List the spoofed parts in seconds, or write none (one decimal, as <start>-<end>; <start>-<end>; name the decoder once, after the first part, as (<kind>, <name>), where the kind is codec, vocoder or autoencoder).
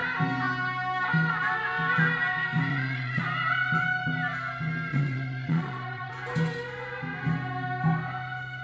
2.7-3.2 (vocoder, Vocos); 4.9-6.1